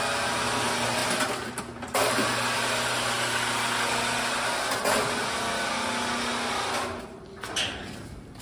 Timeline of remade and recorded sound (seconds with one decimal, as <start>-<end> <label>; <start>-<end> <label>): 0.0-8.4 recorded